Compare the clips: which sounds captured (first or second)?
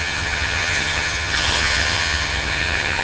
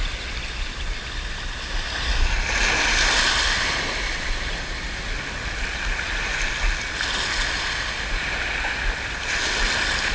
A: second